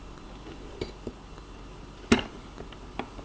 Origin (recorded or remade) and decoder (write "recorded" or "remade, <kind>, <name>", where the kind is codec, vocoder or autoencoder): recorded